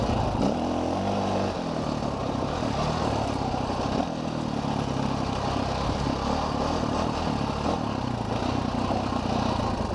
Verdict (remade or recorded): recorded